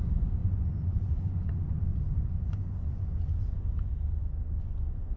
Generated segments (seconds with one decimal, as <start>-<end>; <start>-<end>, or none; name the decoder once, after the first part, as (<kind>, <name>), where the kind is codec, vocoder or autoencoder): 0.0-3.9 (vocoder, Vocos); 4.6-5.2